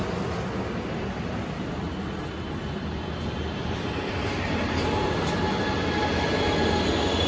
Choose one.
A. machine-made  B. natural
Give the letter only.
B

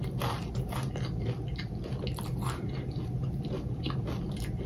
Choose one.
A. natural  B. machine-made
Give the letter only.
A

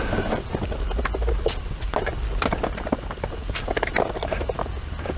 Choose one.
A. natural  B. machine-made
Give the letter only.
A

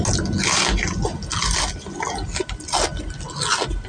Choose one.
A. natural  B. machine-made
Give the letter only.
A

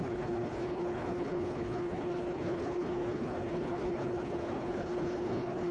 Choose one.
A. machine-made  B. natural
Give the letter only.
A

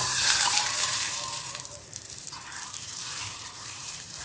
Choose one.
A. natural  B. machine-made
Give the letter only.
B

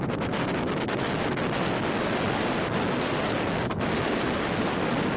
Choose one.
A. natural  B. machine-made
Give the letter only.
A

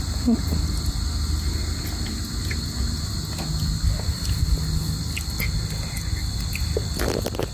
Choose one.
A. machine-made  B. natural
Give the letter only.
B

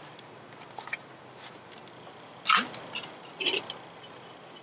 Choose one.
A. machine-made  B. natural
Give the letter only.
B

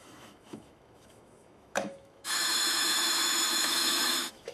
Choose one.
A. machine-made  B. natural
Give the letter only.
A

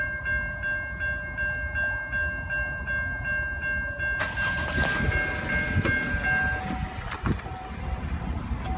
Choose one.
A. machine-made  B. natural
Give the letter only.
B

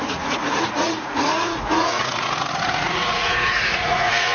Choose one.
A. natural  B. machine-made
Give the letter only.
B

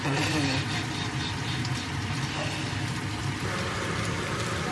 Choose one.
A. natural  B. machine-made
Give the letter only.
B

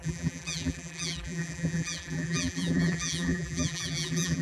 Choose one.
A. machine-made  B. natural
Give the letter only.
A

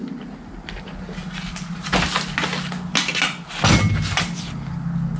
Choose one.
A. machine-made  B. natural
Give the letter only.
B